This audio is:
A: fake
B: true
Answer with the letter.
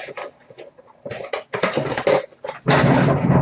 B